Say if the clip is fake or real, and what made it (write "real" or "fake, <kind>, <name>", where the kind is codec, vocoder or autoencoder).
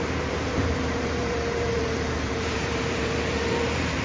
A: fake, vocoder, BigVGAN v2